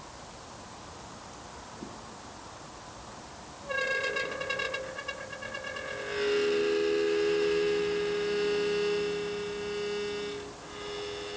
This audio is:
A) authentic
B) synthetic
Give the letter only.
A